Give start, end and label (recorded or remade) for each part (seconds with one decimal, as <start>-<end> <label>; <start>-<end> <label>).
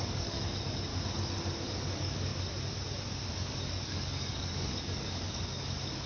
0.0-0.9 remade; 0.9-1.6 recorded; 1.6-2.3 remade; 2.3-3.3 recorded; 3.3-6.1 remade